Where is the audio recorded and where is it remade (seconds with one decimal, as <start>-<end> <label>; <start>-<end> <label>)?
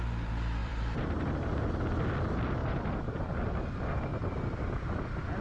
0.0-0.6 recorded; 0.6-1.6 remade; 1.6-2.6 recorded; 2.6-3.5 remade; 3.5-4.1 recorded; 4.1-5.0 remade; 5.0-5.4 recorded